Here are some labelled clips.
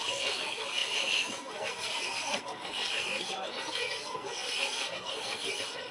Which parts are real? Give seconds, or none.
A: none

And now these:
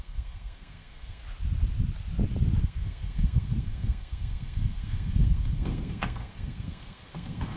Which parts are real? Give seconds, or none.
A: 1.2-2.6

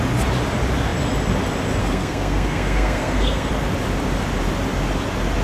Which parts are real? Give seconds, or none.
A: 0.0-1.8; 3.5-5.4

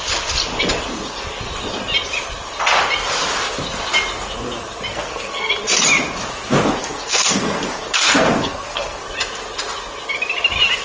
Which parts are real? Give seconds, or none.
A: 0.0-4.9; 5.5-6.8; 9.0-10.8

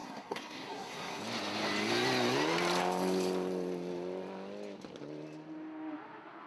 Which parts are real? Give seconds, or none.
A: 1.2-6.5

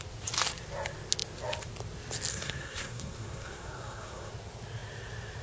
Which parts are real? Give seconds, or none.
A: 0.0-2.3; 4.3-5.4